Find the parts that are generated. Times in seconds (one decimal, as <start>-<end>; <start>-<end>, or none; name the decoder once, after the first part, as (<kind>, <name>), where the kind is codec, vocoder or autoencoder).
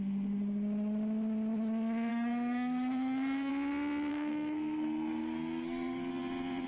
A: 2.1-3.5 (codec, SNAC); 4.1-6.1